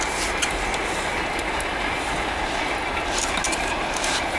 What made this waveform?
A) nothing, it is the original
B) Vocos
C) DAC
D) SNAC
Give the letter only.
A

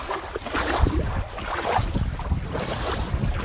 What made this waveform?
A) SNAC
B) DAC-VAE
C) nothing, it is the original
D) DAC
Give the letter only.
C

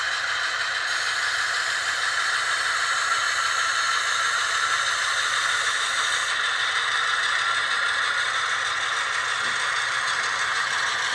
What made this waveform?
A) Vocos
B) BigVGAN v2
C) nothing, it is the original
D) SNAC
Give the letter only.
C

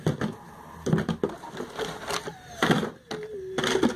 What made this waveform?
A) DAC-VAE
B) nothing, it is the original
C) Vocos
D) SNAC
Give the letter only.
B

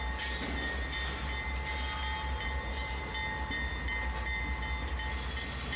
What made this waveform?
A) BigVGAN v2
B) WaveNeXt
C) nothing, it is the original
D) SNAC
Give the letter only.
C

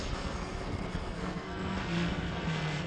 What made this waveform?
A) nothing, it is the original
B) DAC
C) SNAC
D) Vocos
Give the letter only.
C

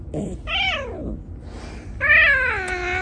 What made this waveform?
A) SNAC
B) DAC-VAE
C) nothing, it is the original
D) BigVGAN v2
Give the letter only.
C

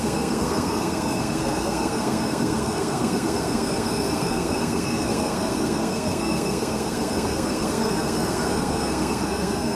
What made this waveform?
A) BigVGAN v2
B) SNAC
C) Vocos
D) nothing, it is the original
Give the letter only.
B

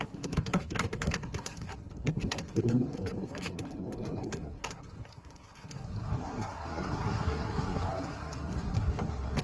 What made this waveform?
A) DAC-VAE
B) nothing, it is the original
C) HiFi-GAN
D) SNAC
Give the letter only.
D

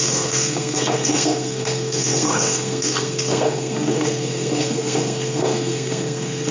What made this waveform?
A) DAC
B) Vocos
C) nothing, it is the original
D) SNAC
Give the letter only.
D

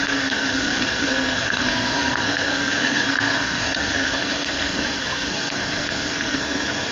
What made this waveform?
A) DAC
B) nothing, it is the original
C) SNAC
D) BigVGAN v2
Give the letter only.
C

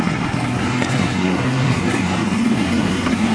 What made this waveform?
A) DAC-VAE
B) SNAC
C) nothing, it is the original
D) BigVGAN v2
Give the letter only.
B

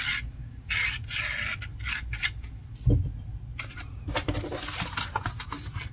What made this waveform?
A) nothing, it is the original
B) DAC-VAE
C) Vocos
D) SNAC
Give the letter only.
A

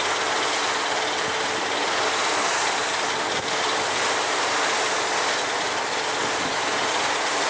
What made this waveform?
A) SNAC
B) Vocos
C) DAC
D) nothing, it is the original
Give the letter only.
D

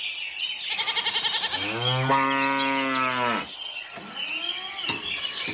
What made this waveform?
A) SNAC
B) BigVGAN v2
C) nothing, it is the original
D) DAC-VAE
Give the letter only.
C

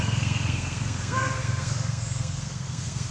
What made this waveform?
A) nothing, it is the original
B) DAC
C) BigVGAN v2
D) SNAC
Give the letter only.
D